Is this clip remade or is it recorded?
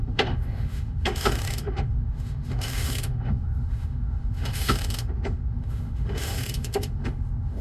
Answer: remade